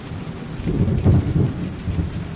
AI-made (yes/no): no